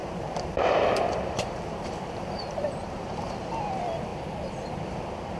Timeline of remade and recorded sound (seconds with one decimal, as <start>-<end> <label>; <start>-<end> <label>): 0.0-3.1 remade; 3.1-5.4 recorded